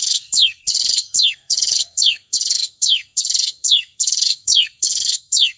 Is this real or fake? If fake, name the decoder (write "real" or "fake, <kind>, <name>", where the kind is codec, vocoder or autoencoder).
fake, codec, SNAC